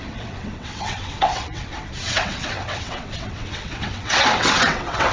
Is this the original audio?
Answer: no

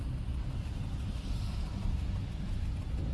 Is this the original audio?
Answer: yes